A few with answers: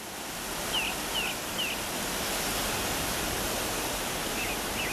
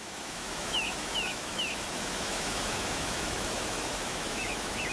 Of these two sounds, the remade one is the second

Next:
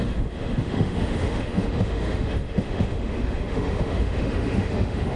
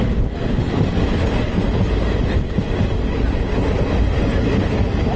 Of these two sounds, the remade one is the first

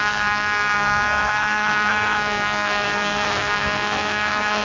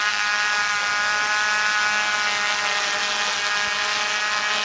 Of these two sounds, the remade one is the first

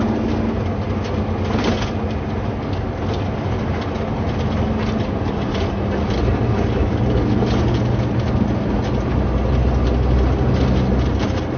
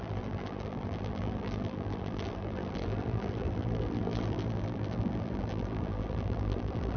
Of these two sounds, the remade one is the second